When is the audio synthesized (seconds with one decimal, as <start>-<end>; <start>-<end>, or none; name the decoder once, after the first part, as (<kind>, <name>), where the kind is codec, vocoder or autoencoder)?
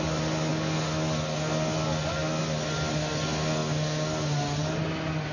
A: none